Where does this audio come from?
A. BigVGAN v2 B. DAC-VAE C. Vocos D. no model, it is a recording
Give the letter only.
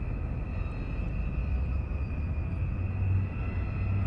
D